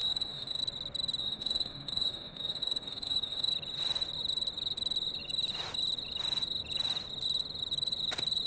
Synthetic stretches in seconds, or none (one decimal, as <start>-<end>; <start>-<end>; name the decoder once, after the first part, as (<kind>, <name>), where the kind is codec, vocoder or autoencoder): 0.0-0.6 (autoencoder, DAC-VAE); 1.2-3.5